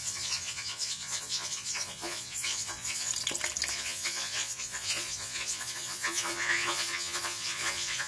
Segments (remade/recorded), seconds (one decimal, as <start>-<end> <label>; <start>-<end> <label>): 0.0-3.1 remade; 3.1-3.7 recorded; 3.7-8.1 remade